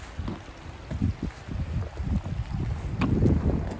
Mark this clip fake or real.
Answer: real